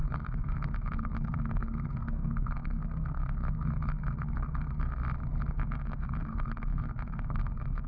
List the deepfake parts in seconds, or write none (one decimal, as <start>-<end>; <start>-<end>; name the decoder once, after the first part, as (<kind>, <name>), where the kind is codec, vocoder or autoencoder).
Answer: 0.0-5.0 (codec, SNAC); 5.5-7.9